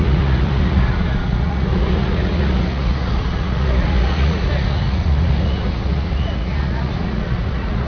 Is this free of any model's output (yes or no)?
no